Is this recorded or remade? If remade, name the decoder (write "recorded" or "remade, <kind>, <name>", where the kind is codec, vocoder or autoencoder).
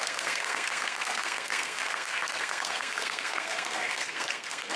remade, codec, SNAC